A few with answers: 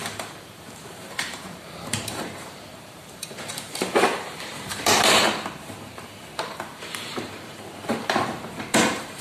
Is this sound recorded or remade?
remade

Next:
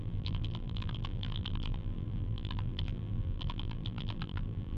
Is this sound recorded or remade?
remade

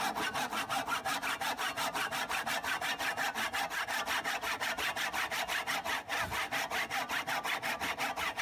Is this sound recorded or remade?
recorded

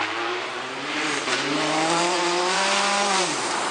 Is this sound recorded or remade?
remade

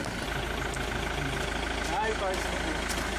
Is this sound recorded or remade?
recorded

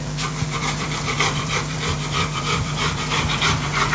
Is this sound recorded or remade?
remade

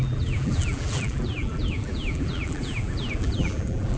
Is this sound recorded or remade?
remade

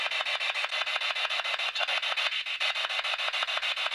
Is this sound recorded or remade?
recorded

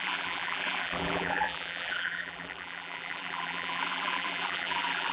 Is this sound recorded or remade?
remade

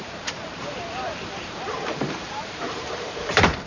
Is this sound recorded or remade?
remade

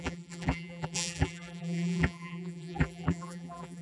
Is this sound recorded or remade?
remade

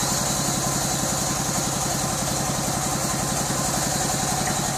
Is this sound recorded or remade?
recorded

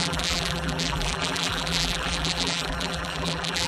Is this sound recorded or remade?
remade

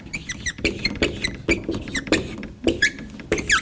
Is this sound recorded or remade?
remade